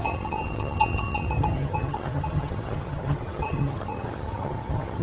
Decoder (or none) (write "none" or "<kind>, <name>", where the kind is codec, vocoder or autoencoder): vocoder, HiFi-GAN